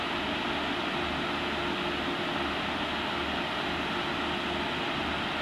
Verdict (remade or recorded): recorded